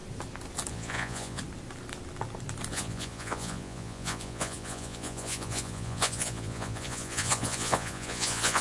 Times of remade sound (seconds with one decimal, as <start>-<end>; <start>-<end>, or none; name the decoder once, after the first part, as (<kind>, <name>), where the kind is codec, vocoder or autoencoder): 0.7-1.4 (vocoder, Vocos); 2.7-8.6